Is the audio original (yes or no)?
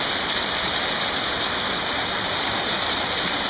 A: no